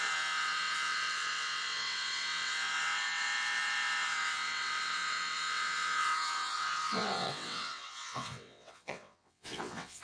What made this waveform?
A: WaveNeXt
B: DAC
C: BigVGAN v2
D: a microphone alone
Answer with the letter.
A